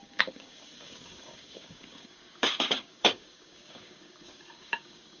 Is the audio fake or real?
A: fake